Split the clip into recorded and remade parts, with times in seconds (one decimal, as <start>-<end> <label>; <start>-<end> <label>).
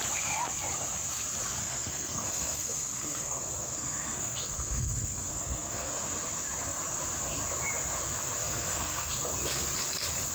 0.0-1.6 recorded; 1.6-5.9 remade; 5.9-8.4 recorded; 8.4-9.1 remade; 9.1-10.3 recorded